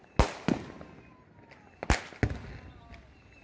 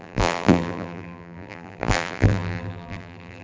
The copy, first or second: second